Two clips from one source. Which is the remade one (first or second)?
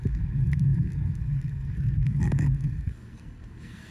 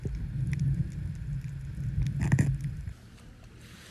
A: first